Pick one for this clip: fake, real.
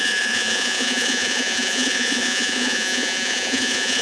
fake